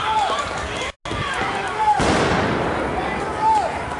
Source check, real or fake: real